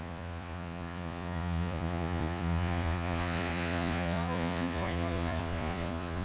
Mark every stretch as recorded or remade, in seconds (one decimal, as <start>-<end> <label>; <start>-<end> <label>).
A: 0.0-6.2 remade